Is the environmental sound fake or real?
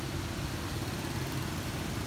real